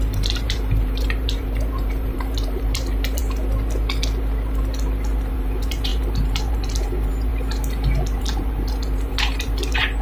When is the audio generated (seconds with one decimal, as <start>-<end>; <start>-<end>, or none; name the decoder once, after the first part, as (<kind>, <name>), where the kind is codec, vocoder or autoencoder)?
0.0-3.2 (vocoder, BigVGAN v2); 5.3-7.3; 8.0-10.0